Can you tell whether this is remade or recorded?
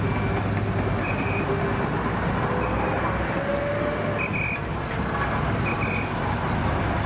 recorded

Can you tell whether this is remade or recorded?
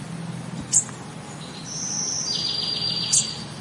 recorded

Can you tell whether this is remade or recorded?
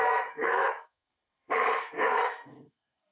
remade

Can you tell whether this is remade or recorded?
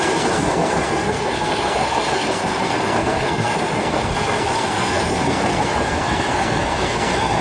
remade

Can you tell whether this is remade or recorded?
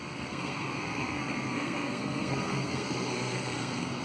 remade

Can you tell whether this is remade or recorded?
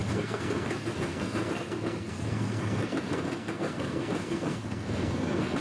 remade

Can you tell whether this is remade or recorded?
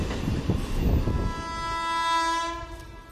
recorded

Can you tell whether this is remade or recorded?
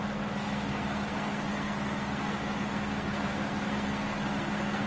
remade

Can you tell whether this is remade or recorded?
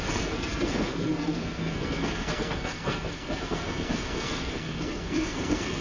remade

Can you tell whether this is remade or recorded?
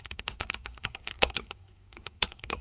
remade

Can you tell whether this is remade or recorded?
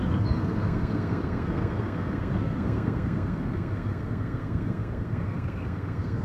remade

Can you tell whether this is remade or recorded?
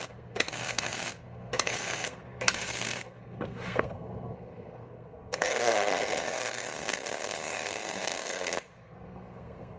remade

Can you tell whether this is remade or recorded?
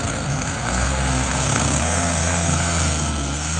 remade